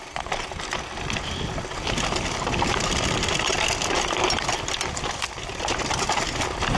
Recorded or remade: recorded